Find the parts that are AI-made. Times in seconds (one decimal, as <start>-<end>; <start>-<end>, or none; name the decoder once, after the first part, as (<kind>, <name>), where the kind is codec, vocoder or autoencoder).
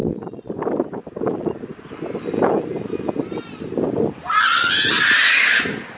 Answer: 0.0-0.5 (vocoder, Vocos)